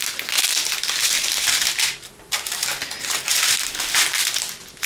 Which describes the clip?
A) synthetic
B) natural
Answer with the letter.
B